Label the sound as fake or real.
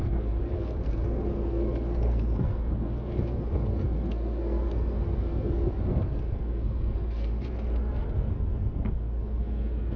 fake